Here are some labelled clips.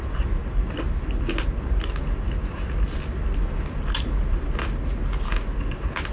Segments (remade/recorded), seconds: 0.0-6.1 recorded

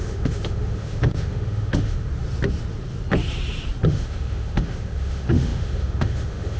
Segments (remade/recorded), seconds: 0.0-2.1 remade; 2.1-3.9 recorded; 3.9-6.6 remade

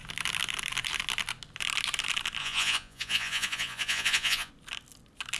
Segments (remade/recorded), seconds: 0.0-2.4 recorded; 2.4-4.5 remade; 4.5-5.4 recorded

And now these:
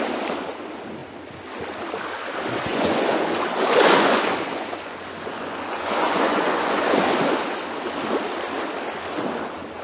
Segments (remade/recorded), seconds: 0.0-2.7 recorded; 2.7-7.6 remade; 7.6-9.8 recorded

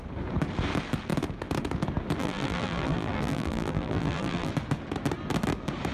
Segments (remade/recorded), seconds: 0.0-2.2 recorded; 2.2-4.5 remade; 4.5-5.9 recorded

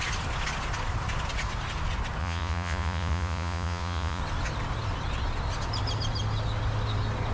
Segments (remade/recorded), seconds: 0.0-2.2 recorded; 2.2-4.2 remade; 4.2-7.3 recorded

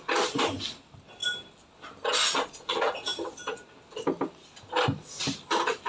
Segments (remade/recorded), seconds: 0.0-5.9 recorded

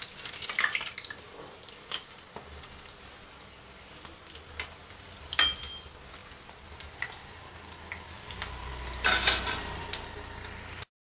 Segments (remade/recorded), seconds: 0.0-11.0 recorded